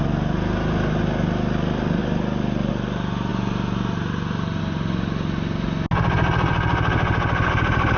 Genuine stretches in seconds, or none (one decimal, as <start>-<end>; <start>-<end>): 0.0-8.0